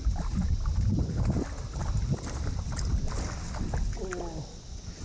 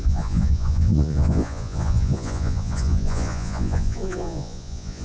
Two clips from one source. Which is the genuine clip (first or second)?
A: first